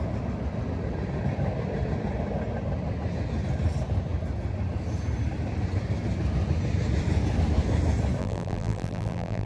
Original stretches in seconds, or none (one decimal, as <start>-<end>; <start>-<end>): 0.0-8.2